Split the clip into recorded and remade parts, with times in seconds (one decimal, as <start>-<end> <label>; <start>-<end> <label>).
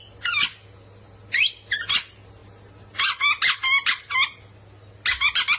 0.0-5.6 recorded